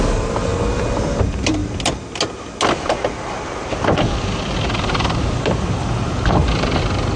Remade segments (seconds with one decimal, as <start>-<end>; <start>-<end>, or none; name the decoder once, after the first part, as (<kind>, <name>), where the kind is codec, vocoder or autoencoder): 0.0-0.5 (vocoder, BigVGAN v2); 1.2-1.6; 4.8-7.2